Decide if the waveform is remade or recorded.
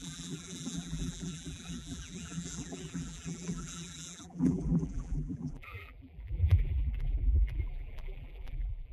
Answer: remade